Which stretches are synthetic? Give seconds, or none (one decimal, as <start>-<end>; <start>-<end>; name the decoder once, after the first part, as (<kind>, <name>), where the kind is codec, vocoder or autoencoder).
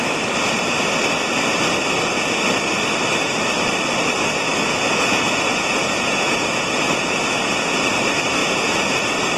4.5-7.9 (vocoder, Vocos); 8.4-9.0